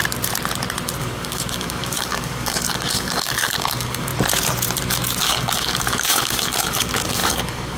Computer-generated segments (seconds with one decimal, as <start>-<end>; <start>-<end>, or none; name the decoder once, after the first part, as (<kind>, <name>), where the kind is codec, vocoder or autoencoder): 1.0-4.1 (codec, DAC); 5.2-7.8